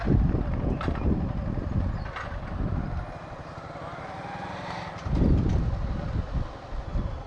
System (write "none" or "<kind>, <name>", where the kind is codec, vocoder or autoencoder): none